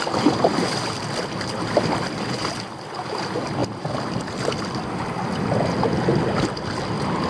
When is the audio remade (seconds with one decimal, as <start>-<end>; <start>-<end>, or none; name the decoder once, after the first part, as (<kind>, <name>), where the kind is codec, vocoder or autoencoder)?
none